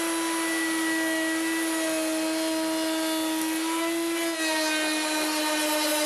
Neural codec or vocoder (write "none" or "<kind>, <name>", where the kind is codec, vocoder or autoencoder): none